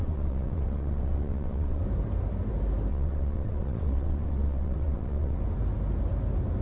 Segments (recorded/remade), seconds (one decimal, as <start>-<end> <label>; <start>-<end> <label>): 0.0-1.8 remade; 1.8-2.9 recorded; 2.9-5.4 remade; 5.4-6.6 recorded